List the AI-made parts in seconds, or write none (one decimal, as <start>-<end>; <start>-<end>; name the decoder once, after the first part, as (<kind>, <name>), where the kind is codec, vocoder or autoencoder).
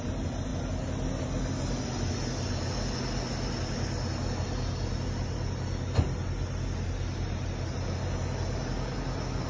none